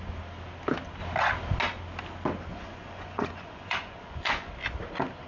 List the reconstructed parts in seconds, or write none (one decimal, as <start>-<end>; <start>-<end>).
2.5-4.5